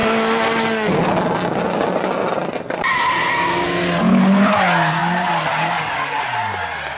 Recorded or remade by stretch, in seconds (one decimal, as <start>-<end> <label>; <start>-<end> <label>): 0.0-4.1 recorded; 4.1-4.6 remade; 4.6-7.0 recorded